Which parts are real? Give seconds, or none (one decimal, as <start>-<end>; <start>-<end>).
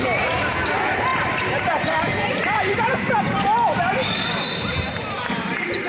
0.0-1.1; 1.7-2.4; 5.5-5.9